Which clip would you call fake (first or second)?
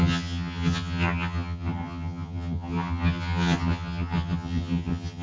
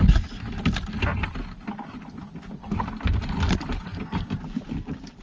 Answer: first